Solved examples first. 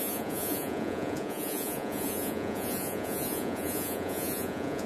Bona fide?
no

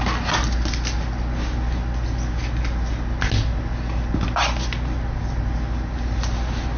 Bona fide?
yes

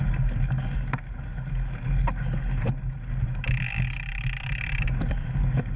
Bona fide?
yes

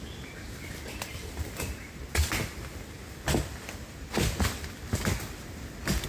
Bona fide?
yes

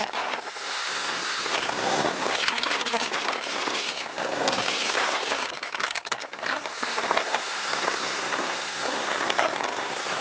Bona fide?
no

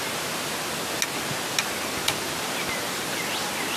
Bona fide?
yes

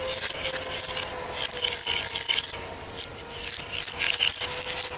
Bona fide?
yes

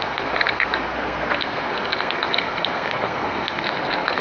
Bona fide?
no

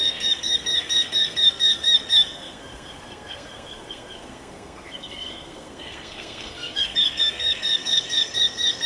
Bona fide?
no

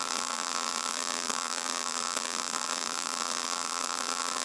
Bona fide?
no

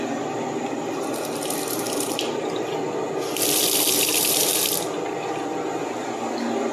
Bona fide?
yes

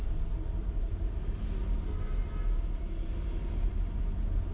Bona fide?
yes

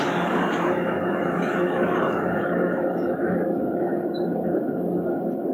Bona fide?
no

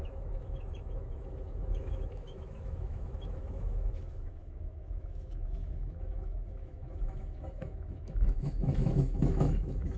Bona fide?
no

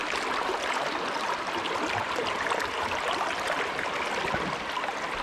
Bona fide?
yes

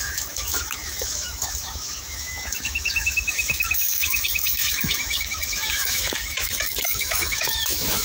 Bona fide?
no